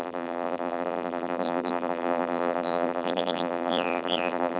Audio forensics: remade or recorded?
remade